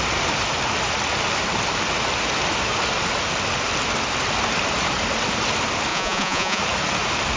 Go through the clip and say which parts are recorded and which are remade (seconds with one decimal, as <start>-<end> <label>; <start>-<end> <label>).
0.0-5.9 recorded; 5.9-6.6 remade; 6.6-7.4 recorded